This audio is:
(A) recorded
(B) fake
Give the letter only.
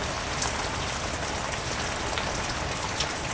A